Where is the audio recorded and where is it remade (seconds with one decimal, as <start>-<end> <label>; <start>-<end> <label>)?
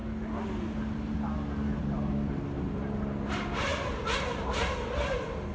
0.0-5.5 recorded